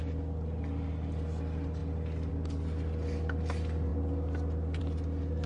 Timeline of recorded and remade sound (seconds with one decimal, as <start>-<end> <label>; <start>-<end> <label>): 0.0-5.5 recorded